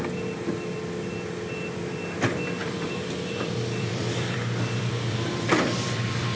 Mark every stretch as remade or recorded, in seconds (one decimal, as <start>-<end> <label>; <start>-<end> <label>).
0.0-2.6 recorded; 2.6-6.4 remade